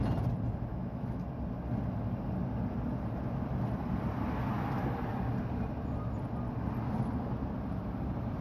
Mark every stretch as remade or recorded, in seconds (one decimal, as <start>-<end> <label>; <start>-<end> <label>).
0.0-0.7 recorded; 0.7-1.2 remade; 1.2-8.4 recorded